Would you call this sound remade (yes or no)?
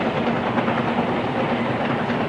no